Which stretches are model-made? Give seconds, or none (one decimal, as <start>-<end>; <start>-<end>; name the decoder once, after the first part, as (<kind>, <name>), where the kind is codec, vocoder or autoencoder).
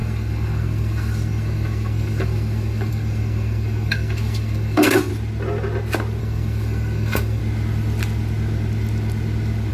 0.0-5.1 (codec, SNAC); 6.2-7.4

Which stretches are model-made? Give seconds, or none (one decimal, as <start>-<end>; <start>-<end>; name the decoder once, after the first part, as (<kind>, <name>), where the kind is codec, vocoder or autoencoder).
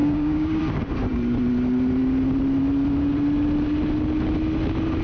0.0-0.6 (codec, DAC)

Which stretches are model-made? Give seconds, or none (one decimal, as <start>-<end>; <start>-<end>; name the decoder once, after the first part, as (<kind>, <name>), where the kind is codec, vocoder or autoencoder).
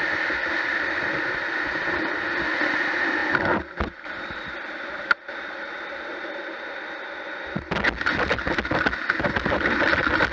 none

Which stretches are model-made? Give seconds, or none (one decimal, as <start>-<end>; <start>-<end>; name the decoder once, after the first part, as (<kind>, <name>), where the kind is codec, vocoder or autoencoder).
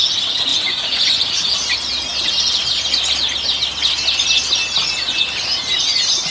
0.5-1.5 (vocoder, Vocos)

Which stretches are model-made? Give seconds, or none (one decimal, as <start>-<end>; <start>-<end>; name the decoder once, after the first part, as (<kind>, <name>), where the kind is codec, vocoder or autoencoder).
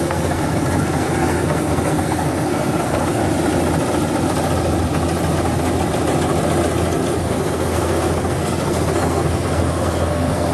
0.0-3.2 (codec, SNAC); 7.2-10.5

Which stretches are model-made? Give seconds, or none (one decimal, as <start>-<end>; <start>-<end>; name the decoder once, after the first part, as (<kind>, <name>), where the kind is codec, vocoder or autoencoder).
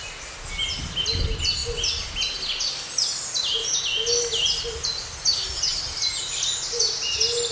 none